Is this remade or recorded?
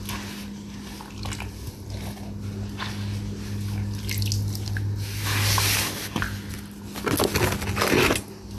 recorded